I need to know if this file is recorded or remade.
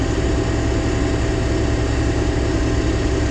recorded